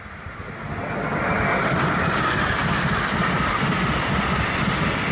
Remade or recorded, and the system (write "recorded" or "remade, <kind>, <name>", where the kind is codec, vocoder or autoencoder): recorded